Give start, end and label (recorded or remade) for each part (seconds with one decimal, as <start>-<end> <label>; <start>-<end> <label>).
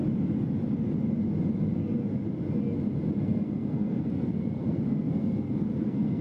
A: 0.0-3.2 recorded; 3.2-6.2 remade